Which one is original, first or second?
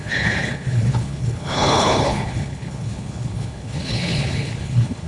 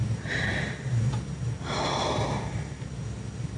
second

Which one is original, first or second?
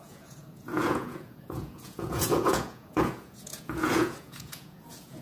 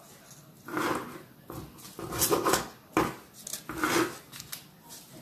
second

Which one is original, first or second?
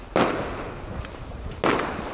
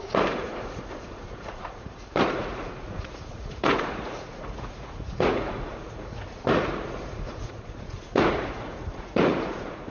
first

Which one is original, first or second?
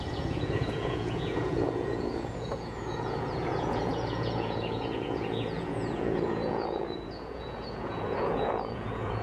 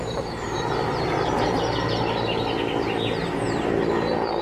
second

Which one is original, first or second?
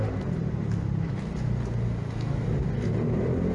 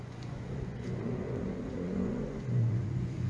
first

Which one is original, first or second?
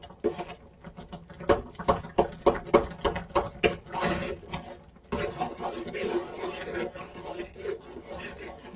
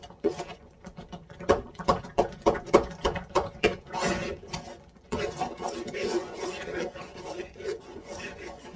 first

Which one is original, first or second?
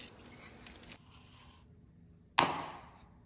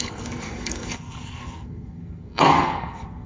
first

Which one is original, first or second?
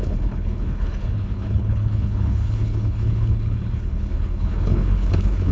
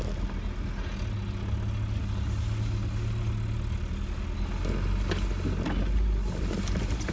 second